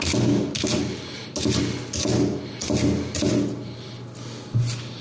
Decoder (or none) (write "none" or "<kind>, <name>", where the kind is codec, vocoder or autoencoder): none